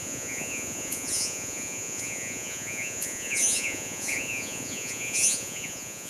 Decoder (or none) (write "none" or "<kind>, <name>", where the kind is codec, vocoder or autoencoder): vocoder, Vocos